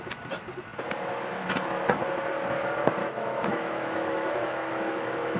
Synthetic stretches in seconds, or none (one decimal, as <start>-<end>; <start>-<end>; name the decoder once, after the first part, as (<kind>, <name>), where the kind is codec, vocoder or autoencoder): 3.0-5.4 (autoencoder, DAC-VAE)